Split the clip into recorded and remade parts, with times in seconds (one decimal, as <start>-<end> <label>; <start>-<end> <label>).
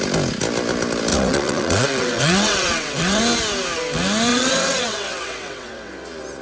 0.0-1.1 recorded; 1.1-3.2 remade; 3.2-4.3 recorded; 4.3-5.9 remade; 5.9-6.4 recorded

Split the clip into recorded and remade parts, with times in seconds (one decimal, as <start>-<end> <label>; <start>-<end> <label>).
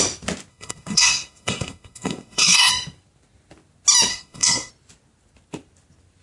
0.0-0.5 recorded; 0.5-2.7 remade; 2.7-4.1 recorded; 4.1-4.7 remade; 4.7-6.2 recorded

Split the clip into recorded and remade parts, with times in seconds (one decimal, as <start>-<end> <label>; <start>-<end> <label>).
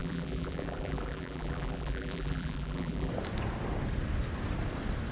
0.0-3.1 remade; 3.1-5.1 recorded